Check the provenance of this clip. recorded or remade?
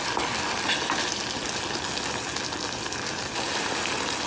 recorded